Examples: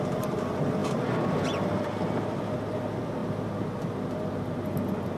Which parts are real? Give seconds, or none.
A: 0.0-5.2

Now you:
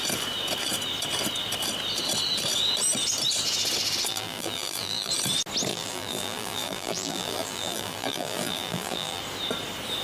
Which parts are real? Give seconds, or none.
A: 0.0-4.1; 5.1-5.7; 9.2-10.0